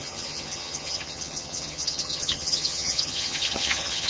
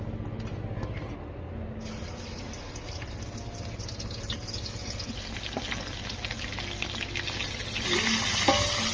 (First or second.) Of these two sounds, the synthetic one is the first